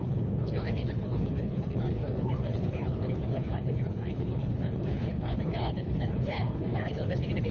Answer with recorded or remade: remade